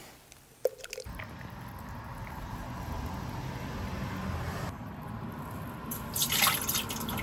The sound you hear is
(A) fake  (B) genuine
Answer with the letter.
B